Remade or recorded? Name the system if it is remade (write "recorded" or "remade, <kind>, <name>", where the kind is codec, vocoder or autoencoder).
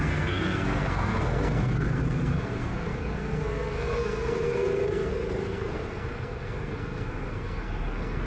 remade, codec, SNAC